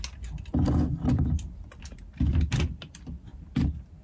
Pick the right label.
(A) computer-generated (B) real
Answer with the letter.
B